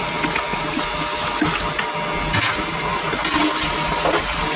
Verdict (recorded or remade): recorded